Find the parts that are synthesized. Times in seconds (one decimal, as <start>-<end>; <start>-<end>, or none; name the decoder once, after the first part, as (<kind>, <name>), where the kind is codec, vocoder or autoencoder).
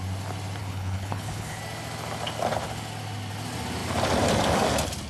0.6-1.6 (codec, HILCodec)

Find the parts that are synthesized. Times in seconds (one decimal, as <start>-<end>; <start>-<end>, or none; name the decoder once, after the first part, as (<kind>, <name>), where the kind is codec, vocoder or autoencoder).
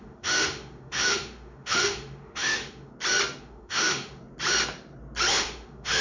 0.0-2.9 (autoencoder, DAC-VAE); 3.4-4.2; 5.3-6.0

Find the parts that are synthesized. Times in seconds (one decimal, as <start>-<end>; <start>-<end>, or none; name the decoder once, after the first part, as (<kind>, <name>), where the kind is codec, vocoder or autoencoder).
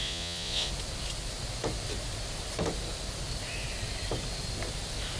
0.0-0.7 (vocoder, Vocos)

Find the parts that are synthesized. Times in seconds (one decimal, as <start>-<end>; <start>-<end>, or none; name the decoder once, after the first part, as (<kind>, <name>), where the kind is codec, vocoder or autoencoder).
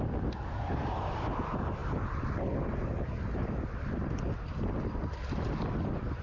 none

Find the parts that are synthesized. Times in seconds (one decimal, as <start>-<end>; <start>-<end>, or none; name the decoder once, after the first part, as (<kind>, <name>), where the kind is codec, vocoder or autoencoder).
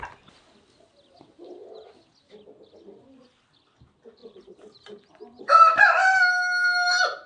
4.2-5.8 (vocoder, BigVGAN v2)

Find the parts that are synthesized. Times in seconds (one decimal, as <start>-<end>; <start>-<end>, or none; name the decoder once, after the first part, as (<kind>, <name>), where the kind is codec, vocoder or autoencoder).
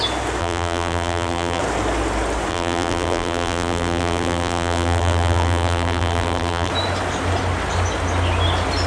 0.4-1.6 (vocoder, BigVGAN v2); 2.5-6.7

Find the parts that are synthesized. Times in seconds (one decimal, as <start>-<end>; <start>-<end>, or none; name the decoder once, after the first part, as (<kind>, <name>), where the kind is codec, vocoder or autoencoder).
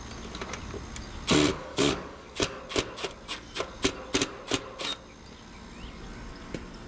1.5-2.6 (codec, DAC)